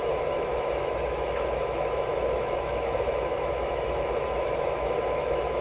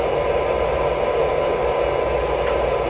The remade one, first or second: first